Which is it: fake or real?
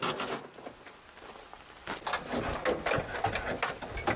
real